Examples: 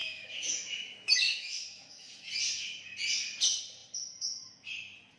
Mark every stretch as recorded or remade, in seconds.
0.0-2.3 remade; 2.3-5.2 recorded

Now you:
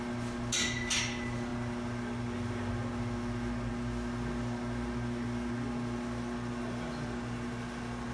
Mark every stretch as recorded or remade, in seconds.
0.0-8.1 recorded

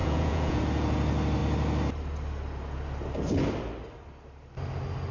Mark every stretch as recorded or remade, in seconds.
0.0-0.6 remade; 0.6-5.1 recorded

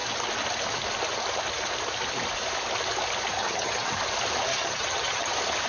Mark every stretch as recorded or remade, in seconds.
0.0-3.4 recorded; 3.4-3.9 remade; 3.9-4.5 recorded; 4.5-5.3 remade; 5.3-5.7 recorded